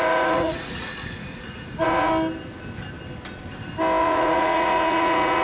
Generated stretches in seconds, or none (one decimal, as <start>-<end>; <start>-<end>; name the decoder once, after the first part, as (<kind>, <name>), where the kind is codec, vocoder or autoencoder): 0.0-2.1 (vocoder, Vocos); 4.0-5.4